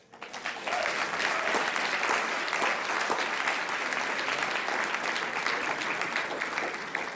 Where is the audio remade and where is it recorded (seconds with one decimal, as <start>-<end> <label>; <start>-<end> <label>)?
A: 0.0-7.2 recorded